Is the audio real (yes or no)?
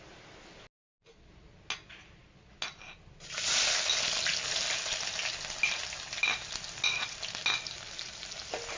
yes